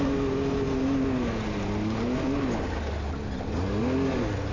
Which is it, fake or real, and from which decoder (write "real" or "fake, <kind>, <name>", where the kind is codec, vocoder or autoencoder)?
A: real